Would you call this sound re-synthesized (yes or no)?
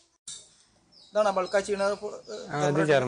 no